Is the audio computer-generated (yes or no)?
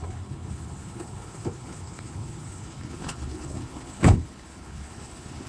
yes